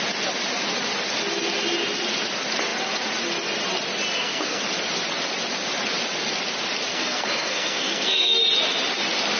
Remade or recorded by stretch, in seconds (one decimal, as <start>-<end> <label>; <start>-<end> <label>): 0.0-4.1 recorded; 4.1-4.6 remade; 4.6-6.9 recorded; 6.9-8.4 remade; 8.4-9.4 recorded

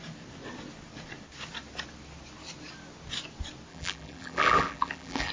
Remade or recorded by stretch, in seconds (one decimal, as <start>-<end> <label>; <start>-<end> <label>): 0.0-3.7 recorded; 3.7-5.3 remade

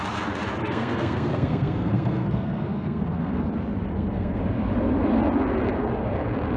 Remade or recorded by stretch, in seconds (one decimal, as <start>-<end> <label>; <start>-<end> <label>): 0.0-0.6 recorded; 0.6-3.4 remade; 3.4-3.9 recorded; 3.9-4.4 remade; 4.4-6.6 recorded